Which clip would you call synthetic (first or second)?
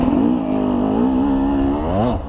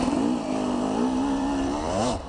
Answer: second